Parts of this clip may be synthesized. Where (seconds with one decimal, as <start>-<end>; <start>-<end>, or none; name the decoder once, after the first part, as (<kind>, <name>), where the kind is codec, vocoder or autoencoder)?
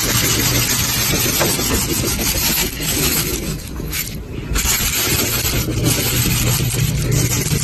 2.1-4.0 (codec, DAC)